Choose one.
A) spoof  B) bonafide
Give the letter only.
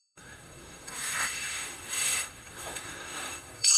A